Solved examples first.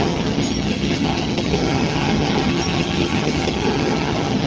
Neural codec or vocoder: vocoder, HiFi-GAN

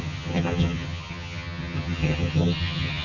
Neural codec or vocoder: vocoder, HiFi-GAN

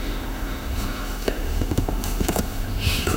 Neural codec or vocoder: autoencoder, DAC-VAE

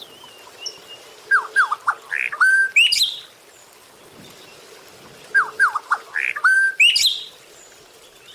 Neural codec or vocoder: none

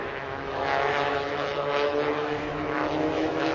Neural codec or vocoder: autoencoder, DAC-VAE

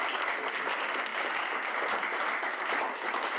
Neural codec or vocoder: none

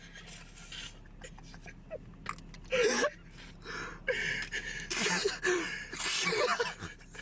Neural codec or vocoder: none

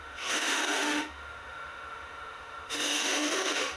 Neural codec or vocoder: autoencoder, DAC-VAE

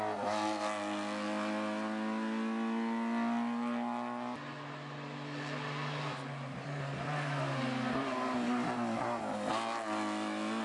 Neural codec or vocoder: none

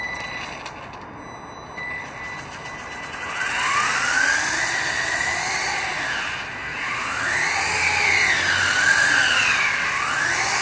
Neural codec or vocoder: none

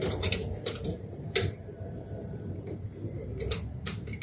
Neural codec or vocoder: vocoder, BigVGAN v2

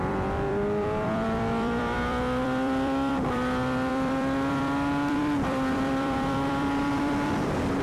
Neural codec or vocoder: vocoder, BigVGAN v2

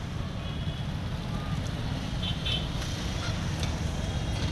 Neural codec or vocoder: none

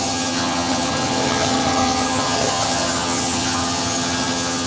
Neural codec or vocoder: vocoder, HiFi-GAN